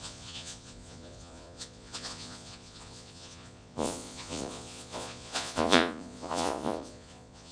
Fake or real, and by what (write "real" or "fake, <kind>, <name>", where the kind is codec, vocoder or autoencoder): fake, vocoder, Vocos